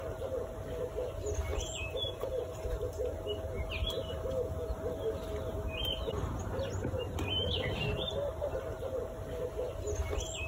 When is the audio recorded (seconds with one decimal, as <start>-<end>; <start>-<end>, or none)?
0.0-1.5; 2.3-10.5